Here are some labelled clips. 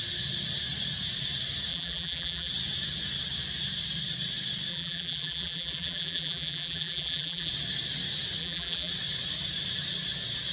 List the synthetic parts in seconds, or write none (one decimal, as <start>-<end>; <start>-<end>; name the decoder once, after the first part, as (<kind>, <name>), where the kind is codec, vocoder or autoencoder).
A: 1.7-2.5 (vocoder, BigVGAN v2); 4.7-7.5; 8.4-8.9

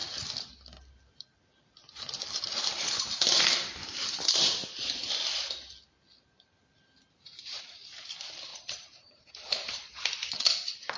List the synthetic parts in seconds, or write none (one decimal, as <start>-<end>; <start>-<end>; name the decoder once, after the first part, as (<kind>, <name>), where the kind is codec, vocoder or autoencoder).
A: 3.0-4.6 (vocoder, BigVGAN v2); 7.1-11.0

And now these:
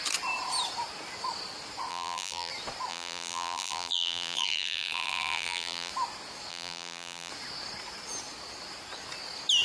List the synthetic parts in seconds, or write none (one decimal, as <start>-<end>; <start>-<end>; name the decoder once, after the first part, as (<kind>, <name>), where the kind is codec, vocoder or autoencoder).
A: 1.9-2.5 (vocoder, BigVGAN v2); 2.9-5.9; 6.5-7.3

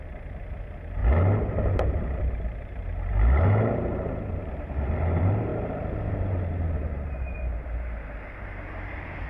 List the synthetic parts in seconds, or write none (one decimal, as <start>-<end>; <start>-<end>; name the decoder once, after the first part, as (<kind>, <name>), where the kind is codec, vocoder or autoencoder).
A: 0.0-1.0 (vocoder, BigVGAN v2); 1.7-9.3

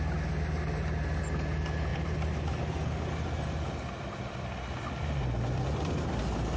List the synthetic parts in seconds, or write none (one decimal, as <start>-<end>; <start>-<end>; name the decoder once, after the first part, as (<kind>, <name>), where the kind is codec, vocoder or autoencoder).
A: 1.9-5.9 (vocoder, BigVGAN v2)

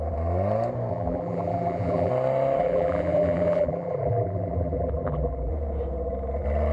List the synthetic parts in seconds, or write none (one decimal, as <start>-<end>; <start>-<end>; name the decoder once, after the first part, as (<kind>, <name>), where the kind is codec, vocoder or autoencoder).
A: 0.9-2.1 (vocoder, BigVGAN v2); 2.6-5.5

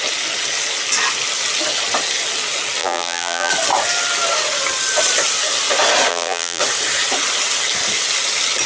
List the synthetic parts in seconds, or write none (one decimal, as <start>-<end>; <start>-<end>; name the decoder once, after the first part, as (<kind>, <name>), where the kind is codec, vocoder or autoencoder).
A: 2.8-3.5 (vocoder, BigVGAN v2); 6.1-6.6

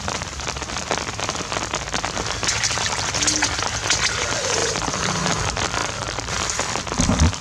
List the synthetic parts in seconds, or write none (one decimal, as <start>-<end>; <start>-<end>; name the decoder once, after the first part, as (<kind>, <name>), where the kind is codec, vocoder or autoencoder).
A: 4.6-5.3 (vocoder, BigVGAN v2); 5.8-6.3